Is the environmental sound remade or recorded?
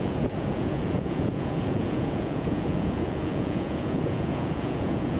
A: remade